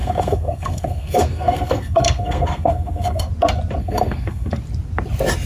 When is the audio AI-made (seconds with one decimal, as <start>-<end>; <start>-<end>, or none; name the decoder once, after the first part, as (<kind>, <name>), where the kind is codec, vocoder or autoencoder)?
0.0-3.3 (codec, SNAC); 3.8-4.6